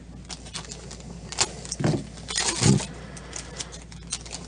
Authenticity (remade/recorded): recorded